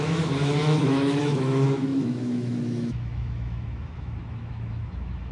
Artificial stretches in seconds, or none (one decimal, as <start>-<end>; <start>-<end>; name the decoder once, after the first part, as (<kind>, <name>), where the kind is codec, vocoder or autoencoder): 0.0-5.3 (autoencoder, DAC-VAE)